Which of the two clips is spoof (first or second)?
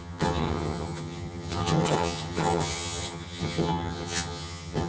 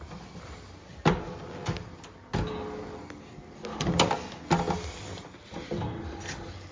first